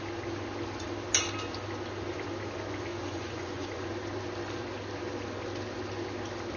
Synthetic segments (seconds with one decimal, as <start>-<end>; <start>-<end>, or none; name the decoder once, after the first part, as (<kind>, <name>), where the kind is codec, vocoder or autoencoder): 2.9-3.9 (vocoder, Vocos)